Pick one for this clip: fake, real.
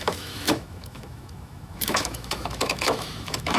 fake